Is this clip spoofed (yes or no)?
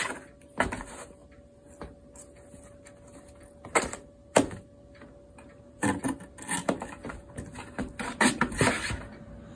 no